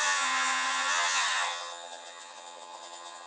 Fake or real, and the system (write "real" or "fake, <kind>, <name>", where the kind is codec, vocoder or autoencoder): fake, vocoder, HiFi-GAN